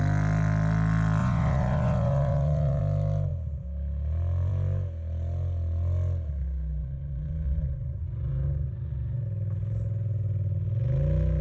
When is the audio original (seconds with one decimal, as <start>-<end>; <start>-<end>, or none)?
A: 0.0-1.2; 2.8-6.8; 9.2-11.4